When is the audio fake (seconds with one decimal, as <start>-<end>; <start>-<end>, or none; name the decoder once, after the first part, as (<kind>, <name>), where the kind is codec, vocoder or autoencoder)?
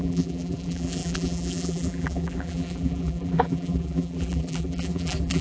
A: 0.0-5.4 (vocoder, BigVGAN v2)